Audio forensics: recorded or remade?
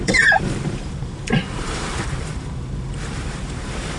remade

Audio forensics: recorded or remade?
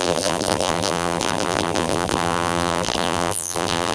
remade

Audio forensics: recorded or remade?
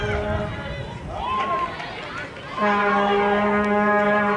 recorded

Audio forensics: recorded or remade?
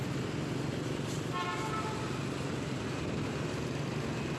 recorded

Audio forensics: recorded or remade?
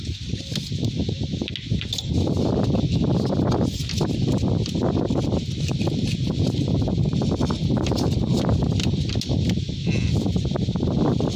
recorded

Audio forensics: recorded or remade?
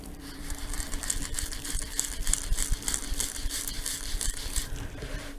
remade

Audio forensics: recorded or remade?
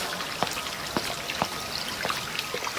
recorded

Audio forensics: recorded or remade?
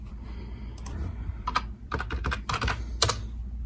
recorded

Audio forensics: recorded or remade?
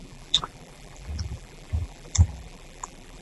remade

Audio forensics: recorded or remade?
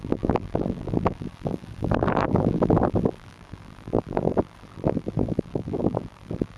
remade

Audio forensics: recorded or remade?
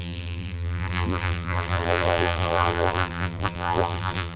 remade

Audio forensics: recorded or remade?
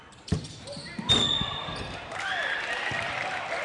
remade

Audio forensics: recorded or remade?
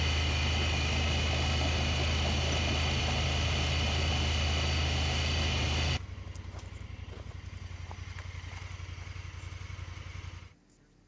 recorded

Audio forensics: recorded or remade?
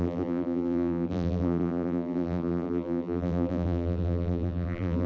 remade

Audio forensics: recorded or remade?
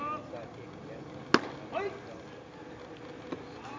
recorded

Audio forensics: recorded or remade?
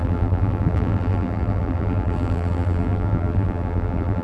remade